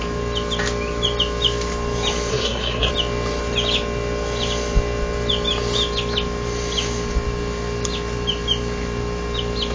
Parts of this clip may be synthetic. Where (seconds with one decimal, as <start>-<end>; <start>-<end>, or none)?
2.3-2.9